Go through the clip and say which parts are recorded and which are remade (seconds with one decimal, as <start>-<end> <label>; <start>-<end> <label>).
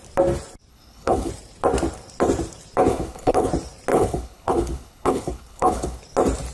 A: 0.0-0.7 recorded; 0.7-1.3 remade; 1.3-2.9 recorded; 2.9-3.5 remade; 3.5-3.9 recorded; 3.9-6.0 remade; 6.0-6.5 recorded